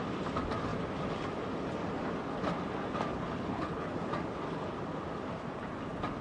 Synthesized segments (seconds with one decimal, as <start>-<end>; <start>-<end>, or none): 3.1-3.9